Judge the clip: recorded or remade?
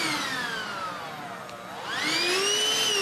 recorded